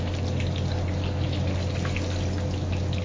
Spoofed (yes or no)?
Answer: no